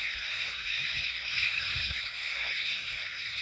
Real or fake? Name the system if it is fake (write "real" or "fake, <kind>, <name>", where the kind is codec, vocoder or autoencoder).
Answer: fake, codec, SNAC